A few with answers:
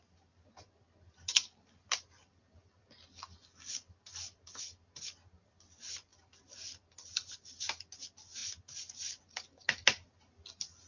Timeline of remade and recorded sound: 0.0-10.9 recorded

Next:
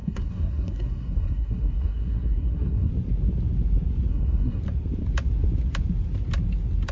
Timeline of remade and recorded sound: 0.0-2.9 remade; 2.9-4.1 recorded; 4.1-4.6 remade; 4.6-6.9 recorded

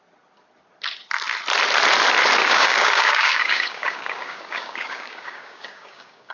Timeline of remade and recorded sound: 0.0-2.4 recorded; 2.4-6.3 remade

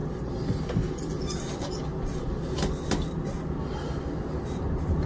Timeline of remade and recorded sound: 0.0-5.1 recorded

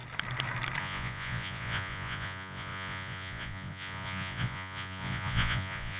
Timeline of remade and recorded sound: 0.0-0.8 recorded; 0.8-6.0 remade